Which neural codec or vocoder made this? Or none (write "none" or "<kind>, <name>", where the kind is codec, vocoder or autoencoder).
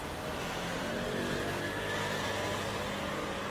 none